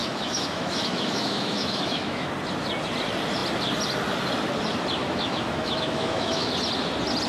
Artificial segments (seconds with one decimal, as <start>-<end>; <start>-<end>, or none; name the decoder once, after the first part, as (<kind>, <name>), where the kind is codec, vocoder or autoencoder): 0.0-2.3 (autoencoder, DAC-VAE); 5.0-6.5